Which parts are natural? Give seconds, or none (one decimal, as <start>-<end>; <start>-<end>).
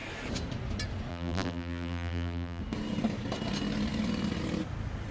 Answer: 0.0-1.1; 2.6-5.1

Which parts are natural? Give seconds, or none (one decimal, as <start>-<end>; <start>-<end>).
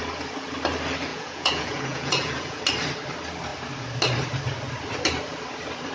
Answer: 0.0-1.1; 2.6-5.9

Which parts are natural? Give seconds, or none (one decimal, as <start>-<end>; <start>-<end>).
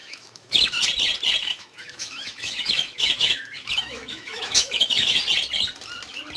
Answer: 0.8-1.4; 5.2-6.4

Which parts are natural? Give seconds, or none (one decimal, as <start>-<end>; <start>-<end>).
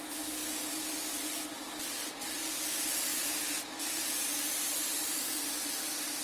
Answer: 0.0-6.2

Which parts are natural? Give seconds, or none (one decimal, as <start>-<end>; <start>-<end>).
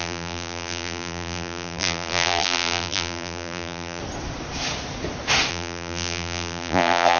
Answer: 4.0-5.5